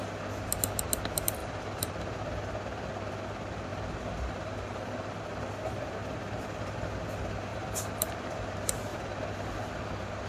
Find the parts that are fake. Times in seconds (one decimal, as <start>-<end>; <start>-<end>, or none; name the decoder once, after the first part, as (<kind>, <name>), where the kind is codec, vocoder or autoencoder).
1.4-2.1 (vocoder, BigVGAN v2); 3.7-5.2; 7.5-8.5; 8.9-9.9

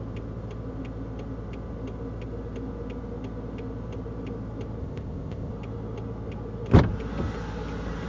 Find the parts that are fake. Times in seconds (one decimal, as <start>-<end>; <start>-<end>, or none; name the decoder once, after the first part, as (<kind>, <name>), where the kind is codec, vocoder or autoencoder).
4.8-5.5 (codec, ZipCodec)

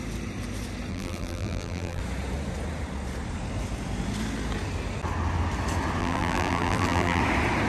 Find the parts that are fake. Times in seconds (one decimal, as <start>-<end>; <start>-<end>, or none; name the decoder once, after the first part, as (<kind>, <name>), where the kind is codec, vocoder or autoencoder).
0.9-2.0 (vocoder, BigVGAN v2); 6.0-7.2